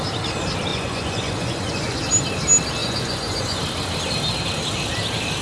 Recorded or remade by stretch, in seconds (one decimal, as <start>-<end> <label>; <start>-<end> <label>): 0.0-0.7 recorded; 0.7-2.0 remade; 2.0-2.8 recorded; 2.8-3.6 remade; 3.6-5.4 recorded